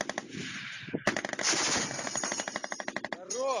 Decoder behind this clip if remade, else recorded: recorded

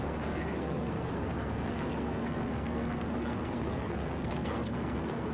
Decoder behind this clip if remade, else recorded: remade, codec, SNAC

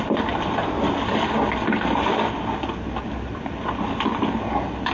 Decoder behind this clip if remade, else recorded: recorded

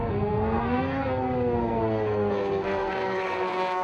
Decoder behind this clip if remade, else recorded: remade, codec, SNAC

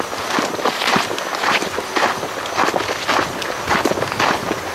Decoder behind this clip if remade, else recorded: recorded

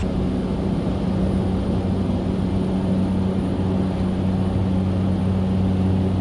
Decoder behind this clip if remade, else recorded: recorded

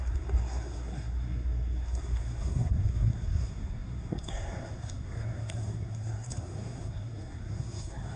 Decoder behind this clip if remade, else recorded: remade, codec, SNAC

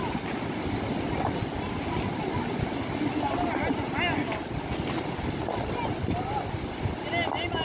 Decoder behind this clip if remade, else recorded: recorded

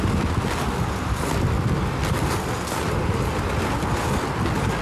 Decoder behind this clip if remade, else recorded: recorded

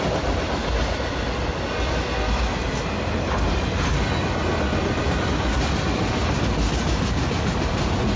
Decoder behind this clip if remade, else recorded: recorded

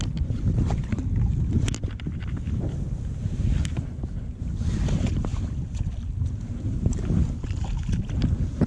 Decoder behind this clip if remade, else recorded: recorded